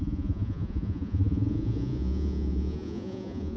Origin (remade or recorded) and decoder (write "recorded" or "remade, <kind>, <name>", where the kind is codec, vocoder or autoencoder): remade, vocoder, Vocos